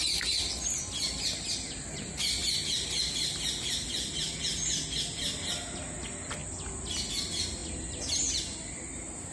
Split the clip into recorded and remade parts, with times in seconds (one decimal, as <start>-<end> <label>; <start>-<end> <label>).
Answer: 0.0-9.3 recorded